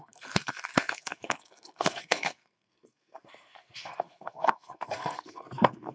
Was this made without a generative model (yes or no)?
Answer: no